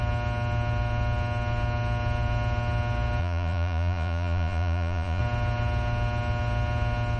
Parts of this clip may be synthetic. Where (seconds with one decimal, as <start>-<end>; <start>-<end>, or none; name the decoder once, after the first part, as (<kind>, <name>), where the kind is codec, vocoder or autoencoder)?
3.2-5.2 (vocoder, Vocos)